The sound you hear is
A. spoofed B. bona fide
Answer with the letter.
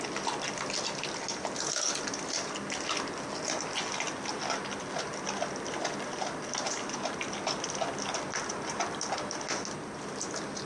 B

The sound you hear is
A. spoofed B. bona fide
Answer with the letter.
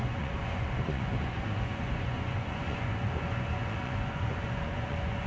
A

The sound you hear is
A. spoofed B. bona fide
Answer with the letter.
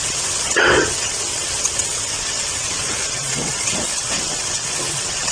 A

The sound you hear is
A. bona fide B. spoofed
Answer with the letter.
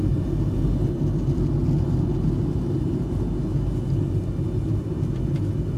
A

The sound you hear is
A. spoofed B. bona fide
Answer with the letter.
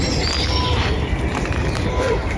B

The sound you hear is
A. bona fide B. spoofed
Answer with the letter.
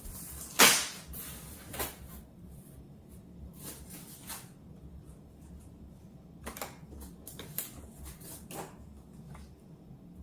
A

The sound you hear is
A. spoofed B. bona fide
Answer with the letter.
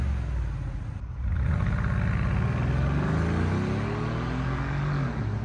B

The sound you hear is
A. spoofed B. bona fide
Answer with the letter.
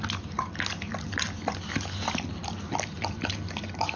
B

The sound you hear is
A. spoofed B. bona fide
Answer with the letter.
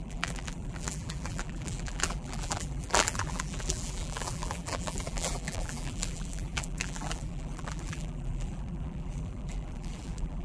A